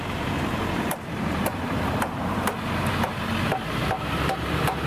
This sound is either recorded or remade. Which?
remade